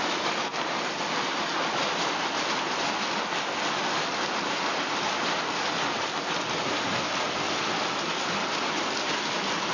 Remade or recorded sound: recorded